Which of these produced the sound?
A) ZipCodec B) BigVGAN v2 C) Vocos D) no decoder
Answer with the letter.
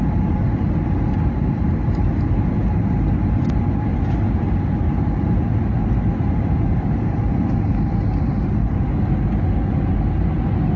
D